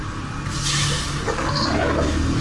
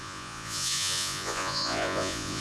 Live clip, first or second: first